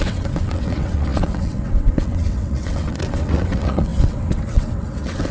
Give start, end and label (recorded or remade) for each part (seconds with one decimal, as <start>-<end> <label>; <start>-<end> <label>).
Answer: 0.0-5.3 remade